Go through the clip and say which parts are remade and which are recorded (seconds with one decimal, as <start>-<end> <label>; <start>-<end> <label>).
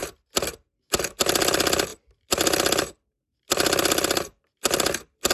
0.0-1.9 recorded; 1.9-5.3 remade